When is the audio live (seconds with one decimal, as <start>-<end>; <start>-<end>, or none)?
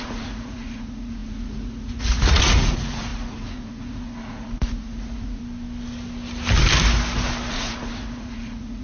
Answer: 5.4-7.5